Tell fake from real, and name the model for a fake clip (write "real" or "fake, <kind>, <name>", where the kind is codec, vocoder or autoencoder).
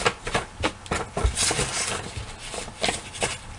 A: real